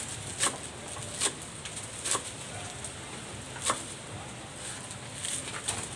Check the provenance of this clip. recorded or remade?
recorded